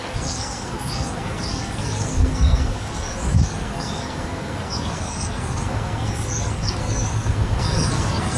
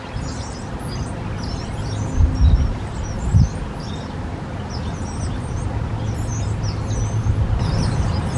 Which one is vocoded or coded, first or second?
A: first